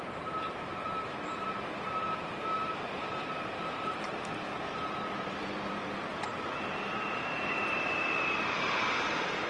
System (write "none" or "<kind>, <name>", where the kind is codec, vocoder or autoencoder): vocoder, BigVGAN v2